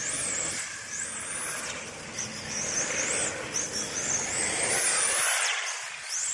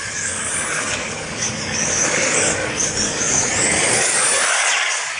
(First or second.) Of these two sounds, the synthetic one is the second